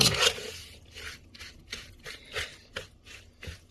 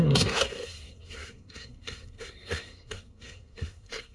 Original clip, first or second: first